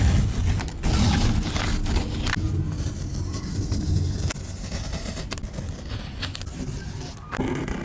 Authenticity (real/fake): real